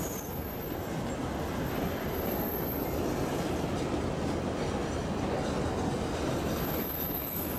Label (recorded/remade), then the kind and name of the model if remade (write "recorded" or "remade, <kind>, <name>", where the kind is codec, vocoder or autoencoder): recorded